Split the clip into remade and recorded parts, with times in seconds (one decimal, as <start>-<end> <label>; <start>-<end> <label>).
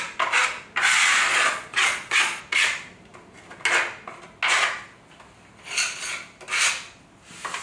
0.0-1.3 recorded; 1.3-2.4 remade; 2.4-7.6 recorded